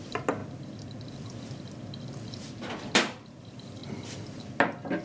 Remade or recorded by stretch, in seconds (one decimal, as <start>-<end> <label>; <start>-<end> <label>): 0.0-5.0 recorded